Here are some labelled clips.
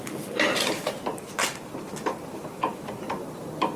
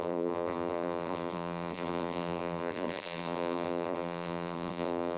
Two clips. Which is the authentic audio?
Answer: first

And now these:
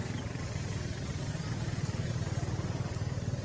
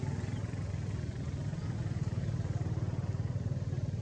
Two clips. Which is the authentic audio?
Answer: second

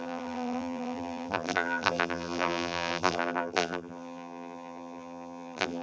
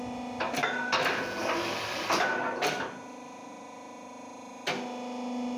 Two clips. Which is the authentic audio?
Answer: second